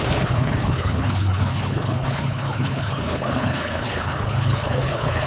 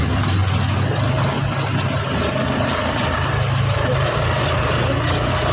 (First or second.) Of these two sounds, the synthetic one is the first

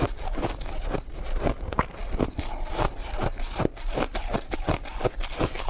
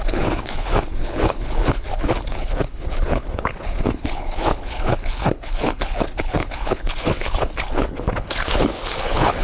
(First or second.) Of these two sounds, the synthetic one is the second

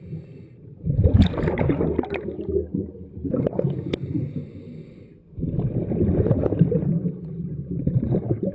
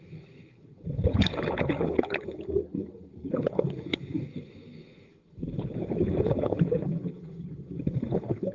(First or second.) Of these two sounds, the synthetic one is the second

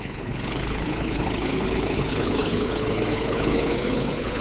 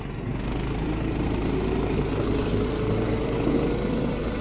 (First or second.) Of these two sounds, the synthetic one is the first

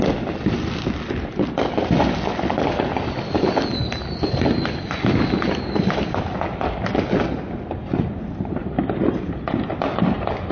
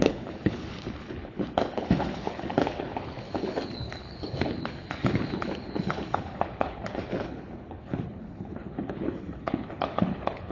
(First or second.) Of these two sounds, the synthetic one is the second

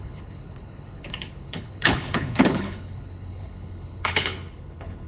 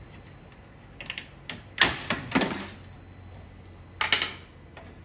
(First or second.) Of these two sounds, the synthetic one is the first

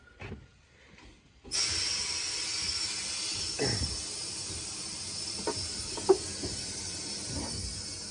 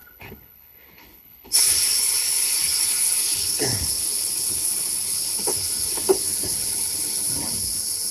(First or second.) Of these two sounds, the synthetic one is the second